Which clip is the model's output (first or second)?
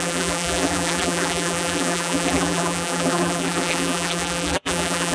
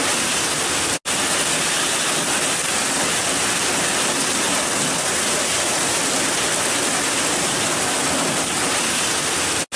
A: first